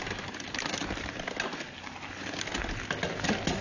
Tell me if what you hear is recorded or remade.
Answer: recorded